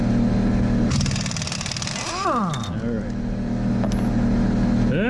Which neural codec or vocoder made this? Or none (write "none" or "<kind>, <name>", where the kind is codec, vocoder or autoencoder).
none